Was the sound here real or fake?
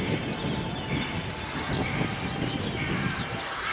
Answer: real